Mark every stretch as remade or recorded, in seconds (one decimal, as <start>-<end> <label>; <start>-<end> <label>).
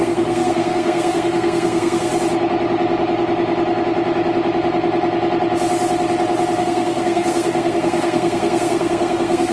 0.0-2.1 remade; 2.1-6.6 recorded; 6.6-9.5 remade